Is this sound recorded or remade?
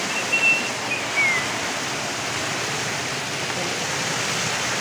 recorded